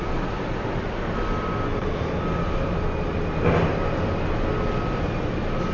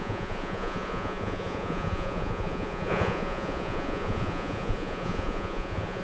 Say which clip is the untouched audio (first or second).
first